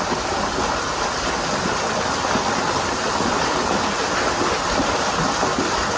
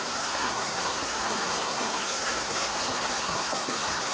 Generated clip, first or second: second